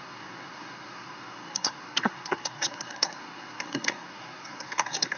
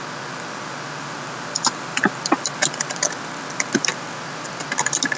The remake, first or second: first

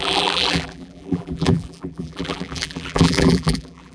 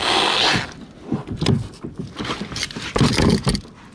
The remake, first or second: first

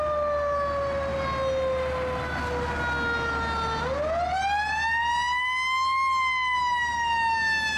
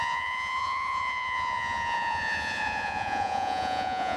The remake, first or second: second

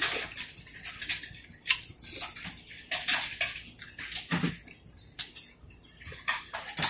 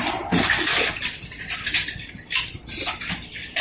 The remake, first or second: second